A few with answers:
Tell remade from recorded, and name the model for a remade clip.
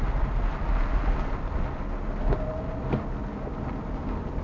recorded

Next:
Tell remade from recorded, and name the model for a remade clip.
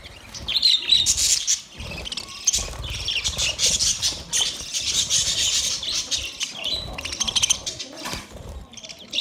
remade, vocoder, BigVGAN v2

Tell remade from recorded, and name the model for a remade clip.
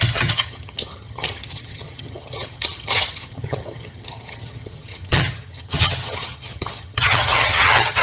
remade, vocoder, HiFi-GAN